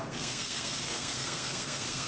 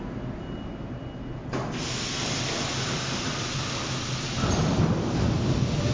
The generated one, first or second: first